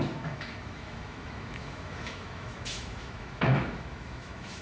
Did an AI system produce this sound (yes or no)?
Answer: yes